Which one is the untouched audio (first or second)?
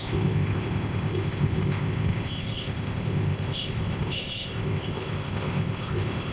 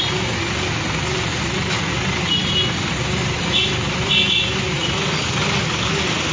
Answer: second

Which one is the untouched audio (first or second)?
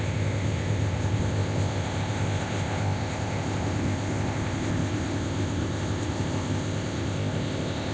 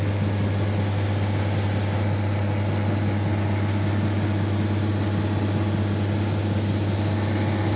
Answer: second